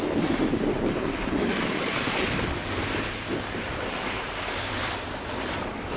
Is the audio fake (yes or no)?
yes